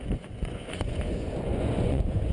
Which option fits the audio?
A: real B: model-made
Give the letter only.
B